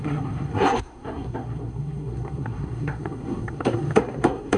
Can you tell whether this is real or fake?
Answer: fake